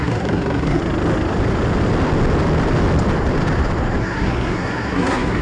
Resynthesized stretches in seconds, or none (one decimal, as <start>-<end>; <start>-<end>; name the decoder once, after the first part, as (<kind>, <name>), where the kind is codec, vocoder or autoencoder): 0.0-0.8 (codec, SNAC); 4.0-5.4